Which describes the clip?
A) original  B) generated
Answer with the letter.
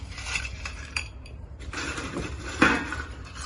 B